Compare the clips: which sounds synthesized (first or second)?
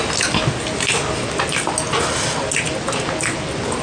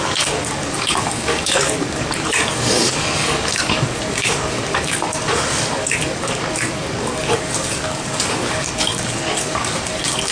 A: second